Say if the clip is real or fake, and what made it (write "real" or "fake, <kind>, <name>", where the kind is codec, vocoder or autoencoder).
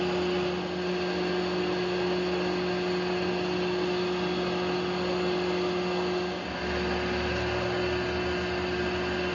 real